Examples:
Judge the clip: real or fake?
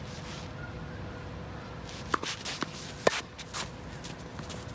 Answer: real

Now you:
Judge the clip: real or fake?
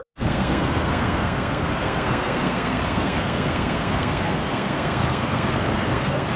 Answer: fake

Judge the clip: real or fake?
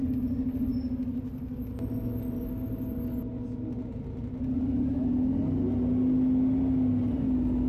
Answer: real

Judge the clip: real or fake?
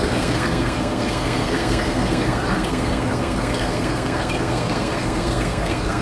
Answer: fake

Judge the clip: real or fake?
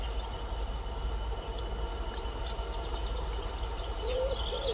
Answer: real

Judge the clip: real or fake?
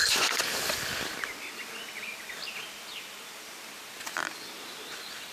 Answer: real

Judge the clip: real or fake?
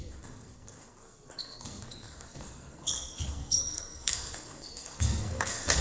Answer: fake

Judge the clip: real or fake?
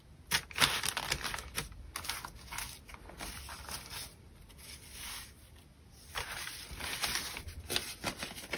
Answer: real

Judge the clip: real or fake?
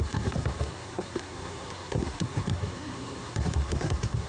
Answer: fake